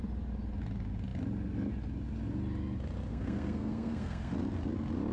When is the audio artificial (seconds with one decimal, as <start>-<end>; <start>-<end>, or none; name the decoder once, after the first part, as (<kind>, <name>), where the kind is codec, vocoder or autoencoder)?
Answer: 3.1-4.3 (codec, SNAC)